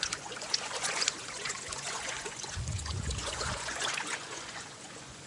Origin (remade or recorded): remade